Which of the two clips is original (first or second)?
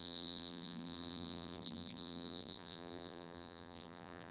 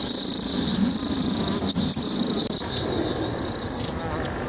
second